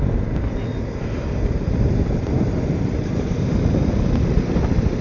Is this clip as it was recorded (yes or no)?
yes